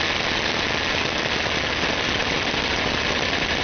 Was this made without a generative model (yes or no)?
yes